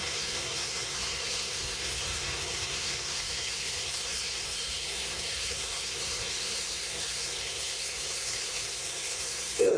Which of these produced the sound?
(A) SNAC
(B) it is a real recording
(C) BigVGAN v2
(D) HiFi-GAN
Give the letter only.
A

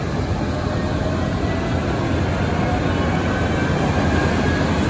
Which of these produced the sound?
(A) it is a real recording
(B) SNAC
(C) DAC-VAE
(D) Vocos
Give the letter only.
A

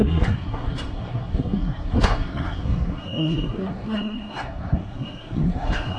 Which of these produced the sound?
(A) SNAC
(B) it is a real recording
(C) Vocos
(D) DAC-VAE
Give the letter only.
A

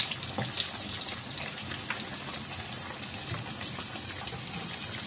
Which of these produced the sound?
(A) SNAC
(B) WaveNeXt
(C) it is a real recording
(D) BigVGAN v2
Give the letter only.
C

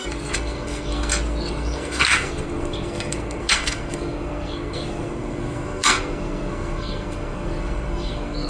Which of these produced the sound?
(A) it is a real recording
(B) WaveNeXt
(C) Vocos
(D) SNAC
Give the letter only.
D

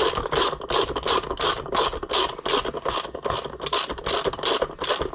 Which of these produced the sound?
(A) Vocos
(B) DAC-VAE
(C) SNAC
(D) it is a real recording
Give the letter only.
D